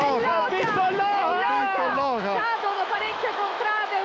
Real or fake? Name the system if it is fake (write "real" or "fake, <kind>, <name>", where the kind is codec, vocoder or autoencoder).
fake, autoencoder, DAC-VAE